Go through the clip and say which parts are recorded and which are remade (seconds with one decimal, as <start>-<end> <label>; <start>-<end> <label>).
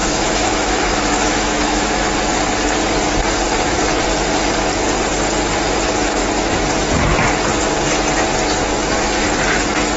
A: 0.0-2.1 remade; 2.1-10.0 recorded